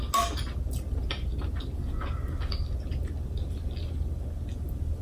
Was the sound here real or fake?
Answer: real